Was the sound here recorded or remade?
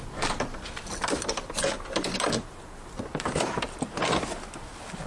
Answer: recorded